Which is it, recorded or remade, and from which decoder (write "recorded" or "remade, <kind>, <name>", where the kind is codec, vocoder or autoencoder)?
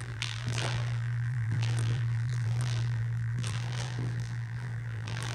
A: remade, vocoder, BigVGAN v2